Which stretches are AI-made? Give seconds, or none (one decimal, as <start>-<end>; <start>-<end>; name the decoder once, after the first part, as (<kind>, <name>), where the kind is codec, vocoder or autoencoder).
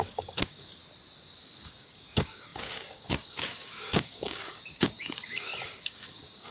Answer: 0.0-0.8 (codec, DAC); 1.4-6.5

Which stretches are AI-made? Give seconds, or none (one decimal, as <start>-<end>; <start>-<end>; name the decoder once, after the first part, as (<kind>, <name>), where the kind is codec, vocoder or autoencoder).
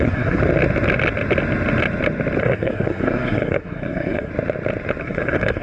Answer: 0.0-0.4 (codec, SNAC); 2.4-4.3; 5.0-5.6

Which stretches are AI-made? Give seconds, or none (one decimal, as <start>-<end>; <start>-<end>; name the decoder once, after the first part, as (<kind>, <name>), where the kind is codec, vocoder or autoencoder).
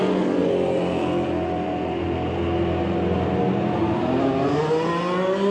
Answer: none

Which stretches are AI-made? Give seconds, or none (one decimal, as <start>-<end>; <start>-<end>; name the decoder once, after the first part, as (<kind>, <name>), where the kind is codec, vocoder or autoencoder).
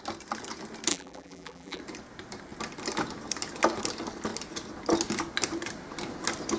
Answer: 0.9-1.8 (vocoder, BigVGAN v2)